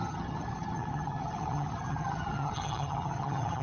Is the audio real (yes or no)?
no